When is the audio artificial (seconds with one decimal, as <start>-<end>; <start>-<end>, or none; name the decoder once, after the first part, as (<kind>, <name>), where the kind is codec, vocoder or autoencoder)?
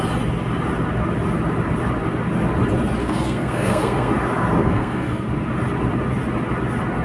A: 3.0-4.1 (codec, SNAC); 4.6-5.3